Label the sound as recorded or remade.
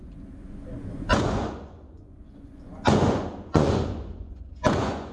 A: remade